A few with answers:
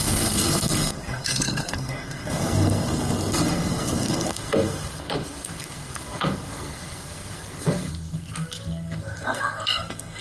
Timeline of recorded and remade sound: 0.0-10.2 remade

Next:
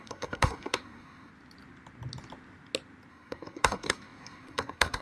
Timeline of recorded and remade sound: 0.0-1.3 remade; 1.3-3.1 recorded; 3.1-5.0 remade

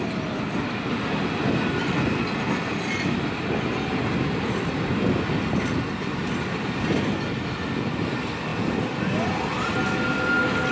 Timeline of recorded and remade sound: 0.0-10.7 recorded

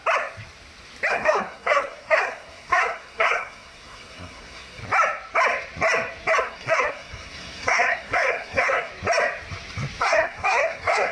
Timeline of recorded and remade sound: 0.0-1.1 recorded; 1.1-4.8 remade; 4.8-6.4 recorded; 6.4-8.9 remade; 8.9-10.0 recorded; 10.0-11.1 remade

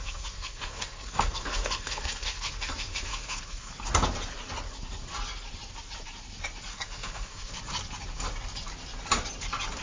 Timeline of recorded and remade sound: 0.0-3.7 remade; 3.7-6.7 recorded; 6.7-7.6 remade; 7.6-9.8 recorded

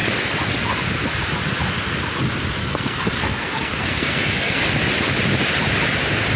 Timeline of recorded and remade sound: 0.0-2.6 recorded; 2.6-4.7 remade; 4.7-6.4 recorded

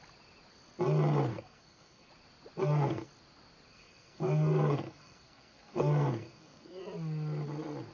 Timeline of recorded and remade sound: 0.0-1.3 recorded; 1.3-2.1 remade; 2.1-2.6 recorded; 2.6-3.1 remade; 3.1-3.7 recorded; 3.7-6.8 remade; 6.8-7.9 recorded

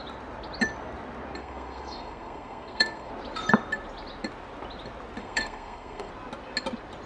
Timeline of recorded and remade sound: 0.0-1.4 recorded; 1.4-3.1 remade; 3.1-5.2 recorded; 5.2-6.1 remade; 6.1-7.1 recorded